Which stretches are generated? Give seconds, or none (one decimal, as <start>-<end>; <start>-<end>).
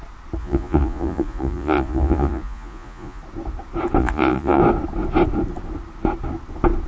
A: 0.4-3.2; 4.0-4.6